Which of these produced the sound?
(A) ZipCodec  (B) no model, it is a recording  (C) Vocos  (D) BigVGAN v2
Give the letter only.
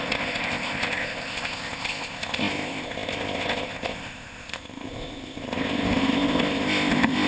A